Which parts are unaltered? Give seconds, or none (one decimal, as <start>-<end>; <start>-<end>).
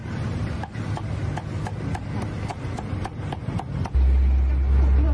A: 0.8-2.5; 3.7-5.1